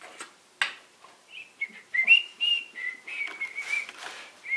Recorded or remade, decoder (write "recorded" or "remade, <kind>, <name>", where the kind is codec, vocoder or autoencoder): recorded